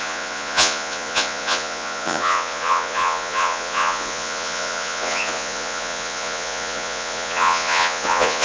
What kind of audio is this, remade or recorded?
remade